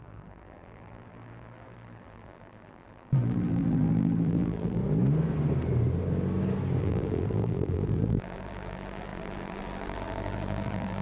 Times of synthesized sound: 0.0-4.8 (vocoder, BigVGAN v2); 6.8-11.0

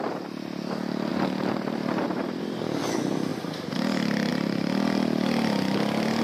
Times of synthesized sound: 1.1-2.8 (vocoder, BigVGAN v2); 3.3-4.3

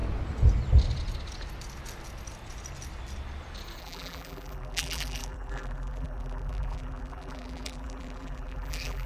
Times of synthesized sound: 3.8-9.1 (vocoder, BigVGAN v2)